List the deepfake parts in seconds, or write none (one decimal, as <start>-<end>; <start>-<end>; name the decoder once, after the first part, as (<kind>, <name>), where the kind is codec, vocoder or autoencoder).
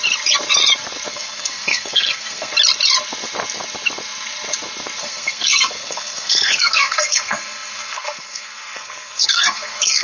1.1-2.5 (codec, SNAC); 5.0-10.0